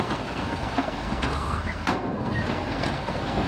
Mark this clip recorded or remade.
remade